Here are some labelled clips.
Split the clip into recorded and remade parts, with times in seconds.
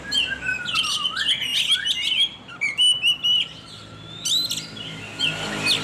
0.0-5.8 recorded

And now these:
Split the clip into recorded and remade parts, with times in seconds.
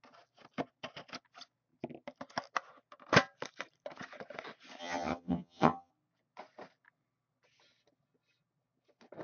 0.0-4.8 recorded; 4.8-5.9 remade; 5.9-9.2 recorded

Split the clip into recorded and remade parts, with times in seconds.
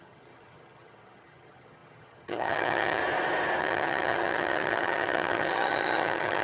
0.0-3.0 remade; 3.0-3.6 recorded; 3.6-6.4 remade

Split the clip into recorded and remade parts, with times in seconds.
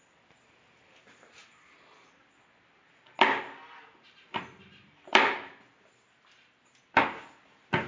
0.0-7.9 recorded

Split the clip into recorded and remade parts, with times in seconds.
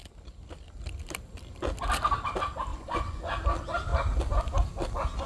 0.0-2.7 recorded; 2.7-3.4 remade; 3.4-5.3 recorded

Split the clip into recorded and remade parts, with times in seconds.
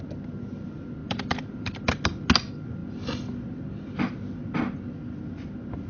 0.0-1.0 recorded; 1.0-1.9 remade; 1.9-5.9 recorded